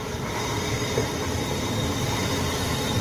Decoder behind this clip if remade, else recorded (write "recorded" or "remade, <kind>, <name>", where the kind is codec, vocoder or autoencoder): recorded